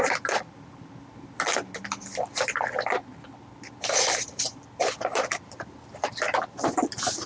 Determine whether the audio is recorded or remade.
recorded